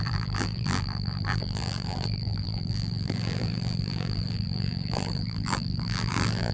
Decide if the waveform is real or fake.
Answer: fake